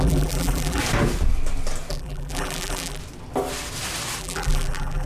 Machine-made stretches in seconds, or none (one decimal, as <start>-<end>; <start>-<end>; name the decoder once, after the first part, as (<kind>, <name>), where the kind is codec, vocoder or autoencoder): 0.0-0.8 (vocoder, BigVGAN v2); 1.9-3.0; 4.2-5.1